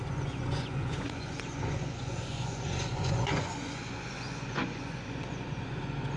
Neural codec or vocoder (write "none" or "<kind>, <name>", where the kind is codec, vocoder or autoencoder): vocoder, Vocos